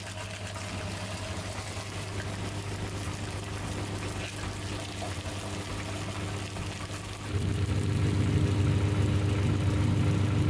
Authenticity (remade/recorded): recorded